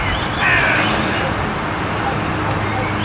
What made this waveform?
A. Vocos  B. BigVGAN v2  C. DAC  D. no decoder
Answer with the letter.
D